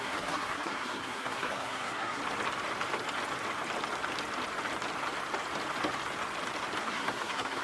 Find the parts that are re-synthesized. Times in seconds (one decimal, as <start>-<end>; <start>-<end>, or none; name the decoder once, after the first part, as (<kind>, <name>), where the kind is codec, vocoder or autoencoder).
0.0-2.2 (codec, SNAC); 6.8-7.6